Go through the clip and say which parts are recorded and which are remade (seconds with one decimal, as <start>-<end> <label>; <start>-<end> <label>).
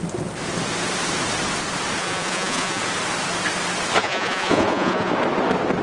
0.0-2.0 recorded; 2.0-2.8 remade; 2.8-4.0 recorded; 4.0-5.1 remade; 5.1-5.8 recorded